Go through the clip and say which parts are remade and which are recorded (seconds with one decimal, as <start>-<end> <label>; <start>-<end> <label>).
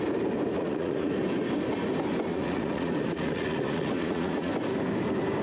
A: 0.0-0.5 recorded; 0.5-1.1 remade; 1.1-2.3 recorded; 2.3-4.5 remade; 4.5-5.4 recorded